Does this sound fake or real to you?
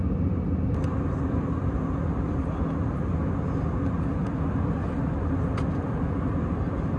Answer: real